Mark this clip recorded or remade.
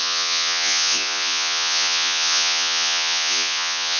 remade